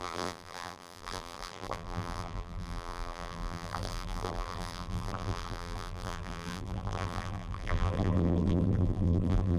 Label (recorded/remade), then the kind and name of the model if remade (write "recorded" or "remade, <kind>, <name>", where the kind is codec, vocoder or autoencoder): remade, vocoder, BigVGAN v2